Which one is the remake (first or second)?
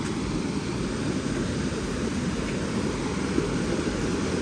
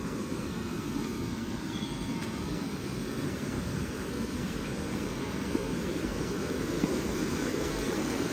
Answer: second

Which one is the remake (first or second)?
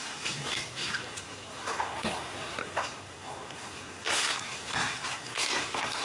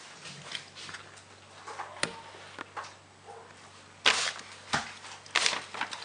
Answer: first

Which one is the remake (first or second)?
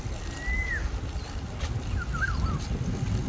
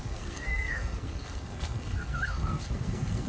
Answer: second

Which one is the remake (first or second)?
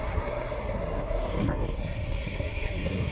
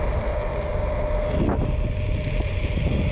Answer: first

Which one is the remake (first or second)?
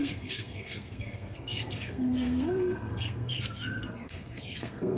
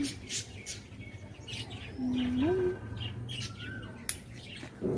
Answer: first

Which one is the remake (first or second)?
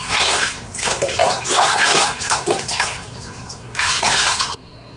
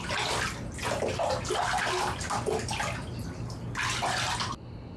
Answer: first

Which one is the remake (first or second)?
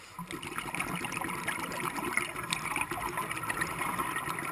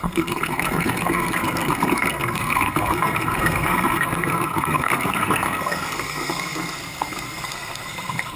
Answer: second